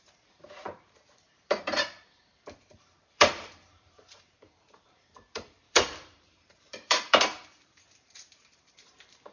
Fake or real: fake